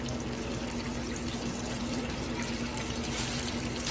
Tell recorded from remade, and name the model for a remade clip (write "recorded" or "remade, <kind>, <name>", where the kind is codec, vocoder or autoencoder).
recorded